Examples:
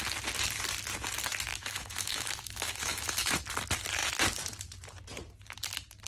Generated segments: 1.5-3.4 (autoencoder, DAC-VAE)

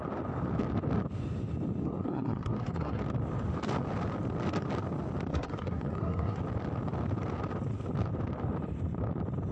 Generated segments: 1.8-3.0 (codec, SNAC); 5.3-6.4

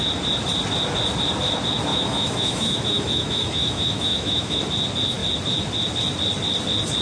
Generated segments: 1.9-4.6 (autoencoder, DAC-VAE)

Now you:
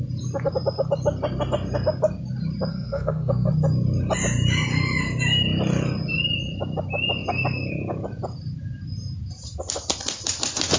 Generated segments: 2.7-3.5 (codec, SNAC)

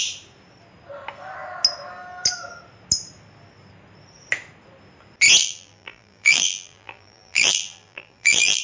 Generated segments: 5.4-8.6 (vocoder, BigVGAN v2)

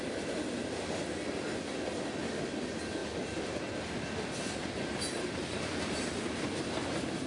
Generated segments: none